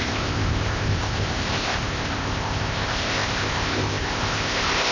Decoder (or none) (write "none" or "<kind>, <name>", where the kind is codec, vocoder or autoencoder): codec, ZipCodec